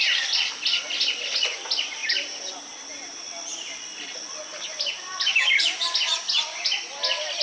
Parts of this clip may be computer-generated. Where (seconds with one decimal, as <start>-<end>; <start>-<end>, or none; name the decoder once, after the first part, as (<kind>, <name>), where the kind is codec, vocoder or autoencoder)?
2.0-2.5 (vocoder, BigVGAN v2)